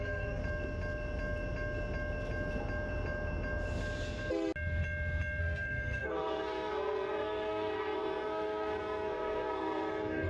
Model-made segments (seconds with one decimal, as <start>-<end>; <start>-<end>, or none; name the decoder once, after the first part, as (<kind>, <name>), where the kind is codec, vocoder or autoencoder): 0.0-0.4 (codec, SNAC); 5.4-10.3